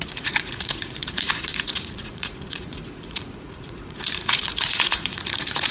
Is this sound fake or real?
fake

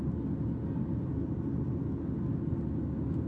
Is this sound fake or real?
real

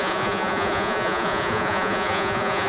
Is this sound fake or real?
fake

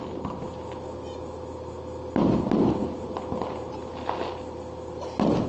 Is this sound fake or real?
real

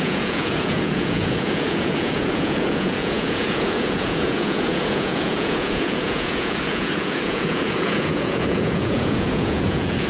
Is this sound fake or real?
fake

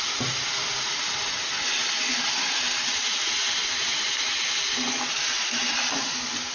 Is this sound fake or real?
real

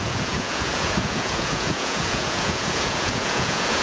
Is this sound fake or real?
fake